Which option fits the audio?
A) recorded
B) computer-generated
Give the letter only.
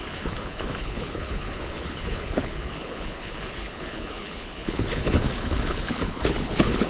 B